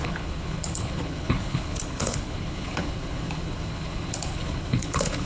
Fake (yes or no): yes